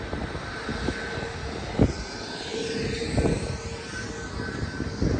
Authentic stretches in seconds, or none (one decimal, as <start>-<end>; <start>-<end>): 0.0-5.2